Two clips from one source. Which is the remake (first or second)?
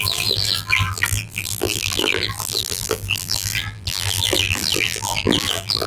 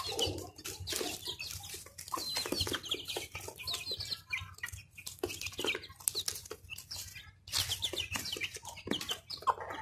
first